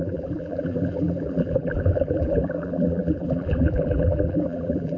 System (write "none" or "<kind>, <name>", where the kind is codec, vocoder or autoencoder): vocoder, BigVGAN v2